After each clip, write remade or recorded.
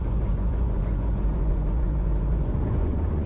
remade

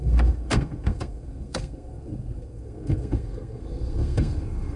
remade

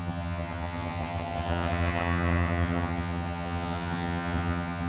remade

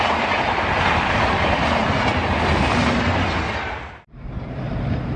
recorded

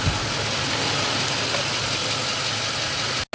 recorded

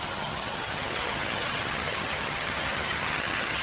remade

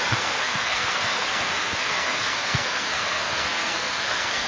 remade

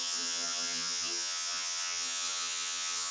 remade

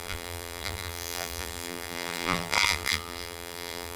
remade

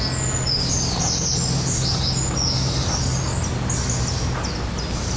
recorded